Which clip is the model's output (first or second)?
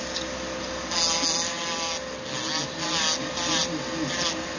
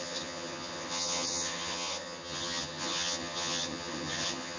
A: second